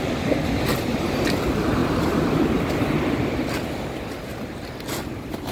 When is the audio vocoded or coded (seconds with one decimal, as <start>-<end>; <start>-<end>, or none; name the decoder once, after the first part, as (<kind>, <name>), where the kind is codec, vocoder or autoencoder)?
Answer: none